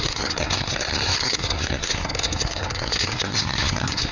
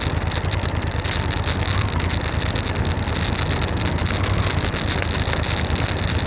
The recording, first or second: second